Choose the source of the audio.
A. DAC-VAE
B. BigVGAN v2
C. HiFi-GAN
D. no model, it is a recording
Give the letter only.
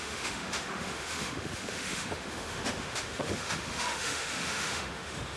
A